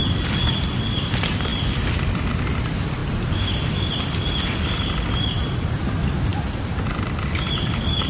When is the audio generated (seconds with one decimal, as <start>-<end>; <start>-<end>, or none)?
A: 0.0-8.1